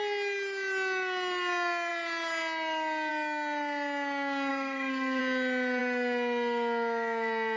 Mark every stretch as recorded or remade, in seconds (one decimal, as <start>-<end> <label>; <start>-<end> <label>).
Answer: 0.0-4.5 recorded; 4.5-5.2 remade; 5.2-7.6 recorded